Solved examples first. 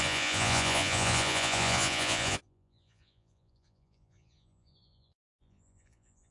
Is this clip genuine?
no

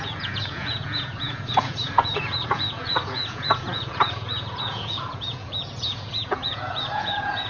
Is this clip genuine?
no